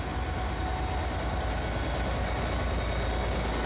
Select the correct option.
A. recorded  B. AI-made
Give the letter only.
A